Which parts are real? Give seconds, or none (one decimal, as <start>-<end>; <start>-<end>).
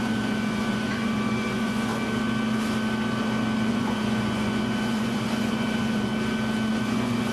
1.9-3.7; 6.1-6.7